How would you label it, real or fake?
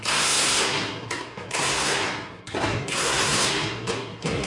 fake